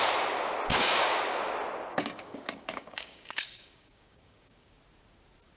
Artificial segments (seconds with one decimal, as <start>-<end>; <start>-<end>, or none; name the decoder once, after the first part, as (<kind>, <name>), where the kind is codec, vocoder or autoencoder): 0.7-1.2 (codec, DAC); 1.9-4.8

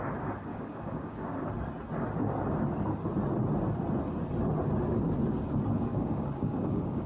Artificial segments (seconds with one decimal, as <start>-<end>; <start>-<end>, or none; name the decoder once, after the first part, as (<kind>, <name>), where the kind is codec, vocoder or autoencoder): 0.5-1.4 (codec, DAC); 5.9-7.1

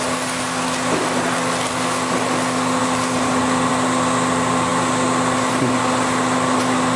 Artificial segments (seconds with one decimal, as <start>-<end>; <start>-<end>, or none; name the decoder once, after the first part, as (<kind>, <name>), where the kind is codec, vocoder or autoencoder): none

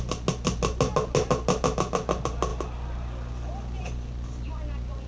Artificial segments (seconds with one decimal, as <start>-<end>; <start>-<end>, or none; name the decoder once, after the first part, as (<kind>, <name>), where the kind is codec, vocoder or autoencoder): none

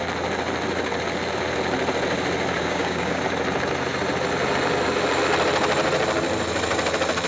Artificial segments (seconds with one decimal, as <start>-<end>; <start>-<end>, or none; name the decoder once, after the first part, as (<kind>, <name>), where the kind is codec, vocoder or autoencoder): 2.6-3.2 (codec, DAC)

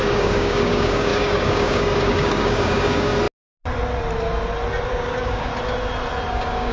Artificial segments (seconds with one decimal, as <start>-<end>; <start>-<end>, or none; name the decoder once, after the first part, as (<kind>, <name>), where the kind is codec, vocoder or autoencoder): 0.0-3.1 (codec, DAC); 4.9-5.5; 6.3-6.7

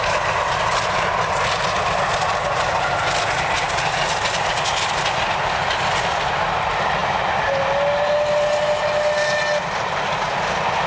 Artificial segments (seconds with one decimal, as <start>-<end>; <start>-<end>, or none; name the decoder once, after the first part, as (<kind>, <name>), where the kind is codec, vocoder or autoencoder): none